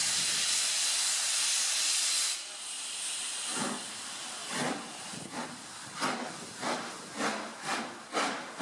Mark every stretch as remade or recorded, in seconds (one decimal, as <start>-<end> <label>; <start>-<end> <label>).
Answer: 0.0-8.6 recorded

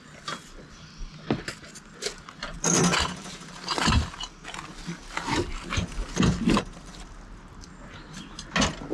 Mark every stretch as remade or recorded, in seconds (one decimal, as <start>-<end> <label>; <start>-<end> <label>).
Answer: 0.0-2.5 recorded; 2.5-3.5 remade; 3.5-6.0 recorded; 6.0-7.0 remade; 7.0-8.9 recorded

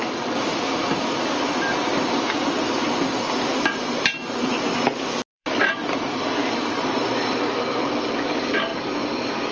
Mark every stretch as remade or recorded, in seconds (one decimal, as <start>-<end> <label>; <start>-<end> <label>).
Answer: 0.0-3.8 remade; 3.8-5.3 recorded; 5.3-8.7 remade; 8.7-9.5 recorded

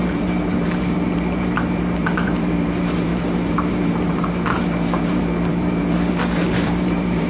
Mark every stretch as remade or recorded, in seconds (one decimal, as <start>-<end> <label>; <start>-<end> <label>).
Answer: 0.0-7.3 remade

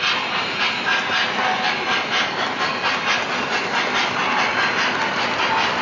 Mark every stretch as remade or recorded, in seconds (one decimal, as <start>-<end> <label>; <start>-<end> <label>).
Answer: 0.0-5.8 recorded